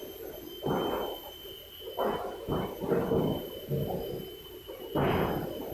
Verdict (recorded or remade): recorded